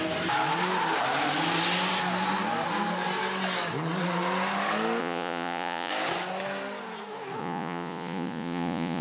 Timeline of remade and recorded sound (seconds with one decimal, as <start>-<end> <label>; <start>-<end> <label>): 0.0-5.0 recorded; 5.0-5.9 remade; 5.9-7.4 recorded; 7.4-9.0 remade